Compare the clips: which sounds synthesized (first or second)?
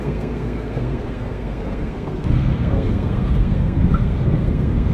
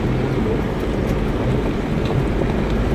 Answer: first